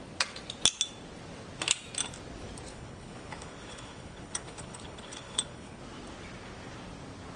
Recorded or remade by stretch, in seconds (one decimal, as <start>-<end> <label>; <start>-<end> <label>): 0.0-2.7 recorded; 2.7-5.8 remade; 5.8-7.4 recorded